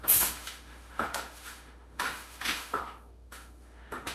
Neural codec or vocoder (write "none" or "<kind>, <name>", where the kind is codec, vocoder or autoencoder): autoencoder, DAC-VAE